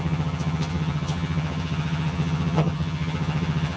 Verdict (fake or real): fake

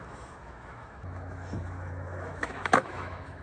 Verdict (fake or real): fake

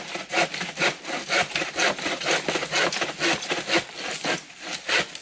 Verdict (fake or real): real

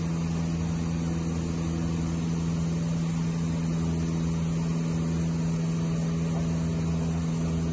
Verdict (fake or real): real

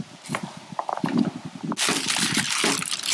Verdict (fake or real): real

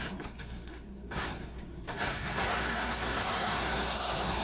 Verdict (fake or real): fake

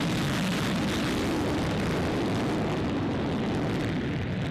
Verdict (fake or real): real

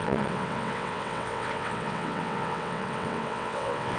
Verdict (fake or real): fake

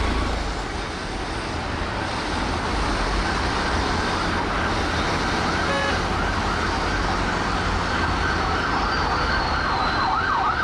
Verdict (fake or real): real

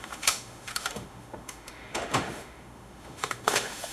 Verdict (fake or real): fake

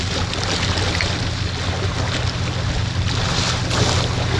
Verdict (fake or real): real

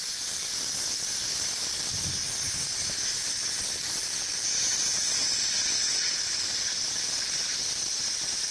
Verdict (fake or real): real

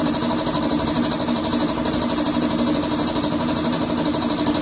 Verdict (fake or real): real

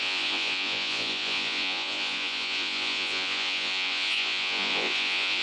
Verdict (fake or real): fake